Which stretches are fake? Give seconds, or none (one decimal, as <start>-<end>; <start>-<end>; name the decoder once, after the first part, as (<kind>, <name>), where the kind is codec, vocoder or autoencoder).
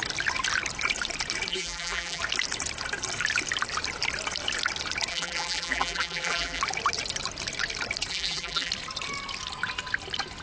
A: 1.5-2.2 (vocoder, BigVGAN v2); 5.1-6.6; 8.1-8.7